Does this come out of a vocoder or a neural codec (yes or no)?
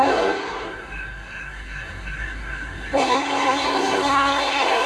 yes